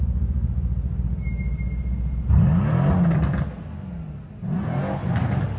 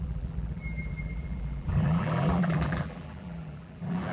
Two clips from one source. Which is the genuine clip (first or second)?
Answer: first